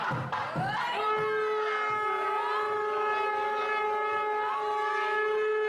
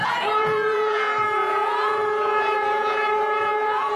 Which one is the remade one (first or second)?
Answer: second